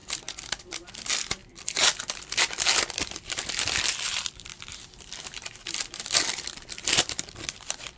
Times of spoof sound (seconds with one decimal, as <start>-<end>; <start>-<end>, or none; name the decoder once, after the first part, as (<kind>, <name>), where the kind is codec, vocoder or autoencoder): 0.6-8.0 (vocoder, BigVGAN v2)